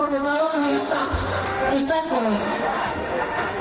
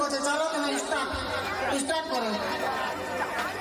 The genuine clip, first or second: second